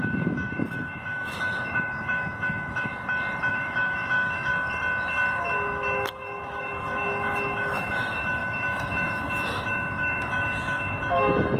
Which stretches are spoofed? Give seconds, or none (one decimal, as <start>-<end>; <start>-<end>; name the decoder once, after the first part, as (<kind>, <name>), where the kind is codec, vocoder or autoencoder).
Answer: 0.0-2.9 (autoencoder, DAC-VAE); 3.5-4.5; 5.4-11.6